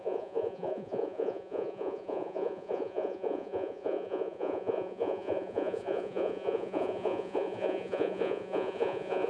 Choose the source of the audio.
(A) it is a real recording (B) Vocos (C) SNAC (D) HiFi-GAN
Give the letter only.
B